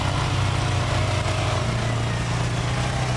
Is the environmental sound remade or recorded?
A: recorded